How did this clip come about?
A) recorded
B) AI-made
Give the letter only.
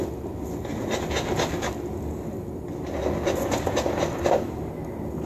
A